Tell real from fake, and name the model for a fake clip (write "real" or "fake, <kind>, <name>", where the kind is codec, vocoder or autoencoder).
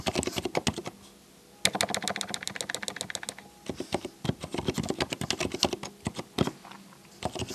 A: real